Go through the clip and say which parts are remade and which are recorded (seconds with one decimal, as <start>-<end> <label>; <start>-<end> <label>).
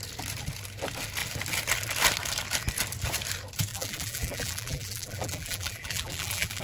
0.0-3.7 recorded; 3.7-6.6 remade